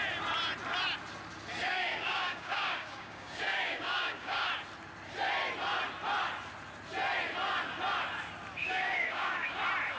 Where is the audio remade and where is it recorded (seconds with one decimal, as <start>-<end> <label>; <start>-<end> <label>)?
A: 0.0-1.6 recorded; 1.6-4.5 remade; 4.5-8.6 recorded; 8.6-9.6 remade; 9.6-10.0 recorded